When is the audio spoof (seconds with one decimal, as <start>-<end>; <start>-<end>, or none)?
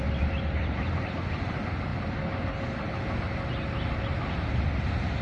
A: none